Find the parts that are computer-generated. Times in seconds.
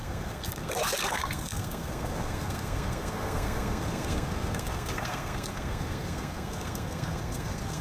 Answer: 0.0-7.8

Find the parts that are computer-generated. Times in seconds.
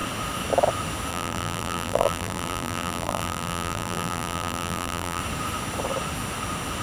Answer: 1.1-5.2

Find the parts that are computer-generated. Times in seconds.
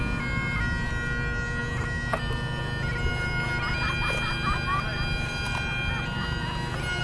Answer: none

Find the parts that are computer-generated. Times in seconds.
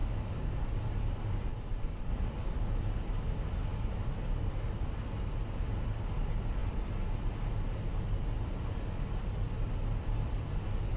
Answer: 1.5-2.1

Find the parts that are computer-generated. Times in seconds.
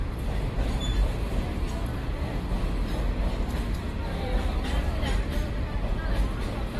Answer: 0.0-1.9; 4.0-6.8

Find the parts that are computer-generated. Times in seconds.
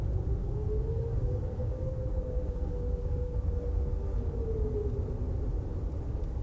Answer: 0.4-4.2